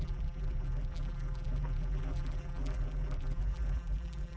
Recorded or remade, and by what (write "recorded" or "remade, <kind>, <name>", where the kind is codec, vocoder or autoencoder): remade, vocoder, BigVGAN v2